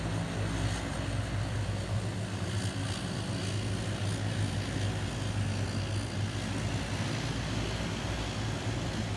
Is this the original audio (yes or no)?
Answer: yes